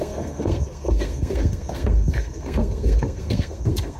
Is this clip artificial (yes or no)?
yes